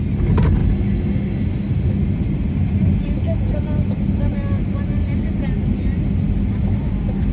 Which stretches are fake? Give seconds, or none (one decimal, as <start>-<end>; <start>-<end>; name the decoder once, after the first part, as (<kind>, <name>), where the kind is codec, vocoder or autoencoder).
none